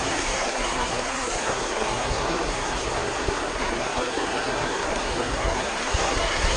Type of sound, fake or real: fake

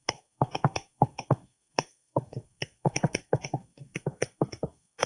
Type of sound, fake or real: fake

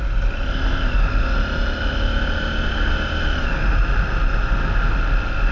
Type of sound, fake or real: real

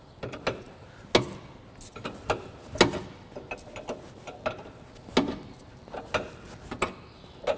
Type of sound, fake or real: real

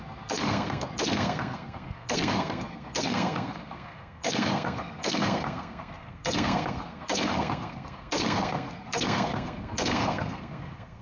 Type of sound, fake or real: fake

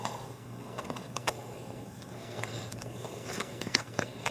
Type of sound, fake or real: fake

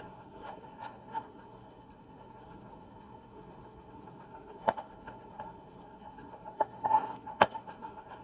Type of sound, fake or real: fake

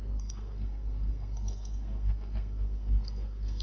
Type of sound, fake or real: fake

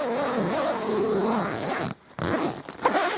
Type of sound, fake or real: real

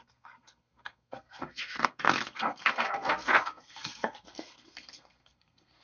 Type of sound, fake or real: fake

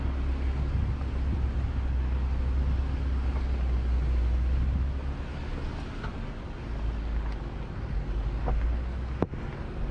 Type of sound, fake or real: real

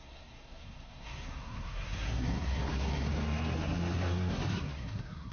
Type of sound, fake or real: fake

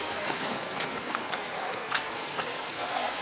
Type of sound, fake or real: fake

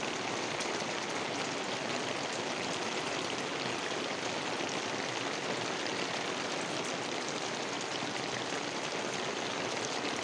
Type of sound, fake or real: real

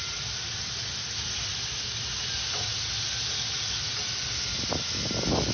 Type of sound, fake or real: real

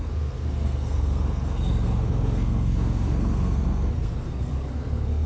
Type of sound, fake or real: fake